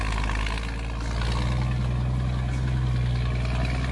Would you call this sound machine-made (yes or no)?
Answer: no